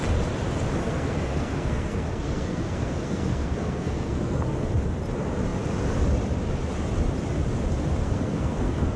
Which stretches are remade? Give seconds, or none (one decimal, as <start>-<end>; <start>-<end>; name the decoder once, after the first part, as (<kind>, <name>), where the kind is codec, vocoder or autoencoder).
0.8-4.7 (codec, SNAC); 8.0-9.0